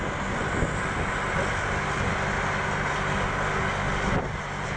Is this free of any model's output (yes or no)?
yes